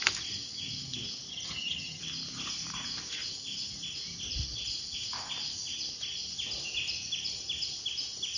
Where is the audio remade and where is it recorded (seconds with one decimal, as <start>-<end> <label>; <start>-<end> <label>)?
0.0-1.3 recorded; 1.3-2.0 remade; 2.0-8.4 recorded